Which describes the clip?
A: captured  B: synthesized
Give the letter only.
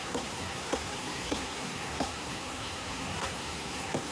B